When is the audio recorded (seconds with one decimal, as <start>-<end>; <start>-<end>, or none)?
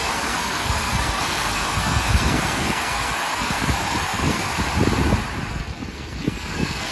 4.5-5.5